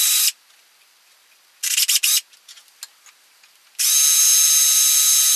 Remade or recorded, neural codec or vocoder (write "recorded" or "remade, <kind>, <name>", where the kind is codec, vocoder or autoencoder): recorded